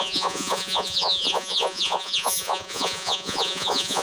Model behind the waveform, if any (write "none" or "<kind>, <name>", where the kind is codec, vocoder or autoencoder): vocoder, Vocos